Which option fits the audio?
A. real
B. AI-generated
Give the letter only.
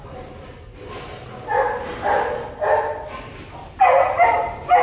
A